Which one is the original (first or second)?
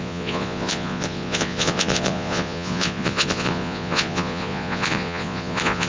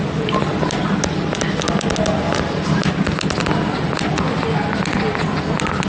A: second